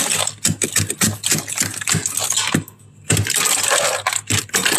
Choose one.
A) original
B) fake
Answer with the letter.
A